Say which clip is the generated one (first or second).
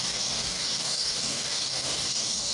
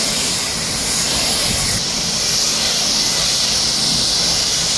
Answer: first